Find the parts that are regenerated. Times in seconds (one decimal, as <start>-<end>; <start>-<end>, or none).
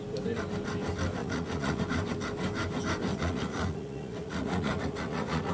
1.2-1.8; 3.1-5.5